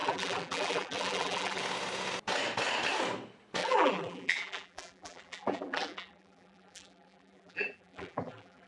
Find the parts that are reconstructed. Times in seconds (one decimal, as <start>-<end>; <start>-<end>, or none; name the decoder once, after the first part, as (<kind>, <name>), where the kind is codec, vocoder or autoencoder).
0.0-1.6 (vocoder, BigVGAN v2); 3.6-8.7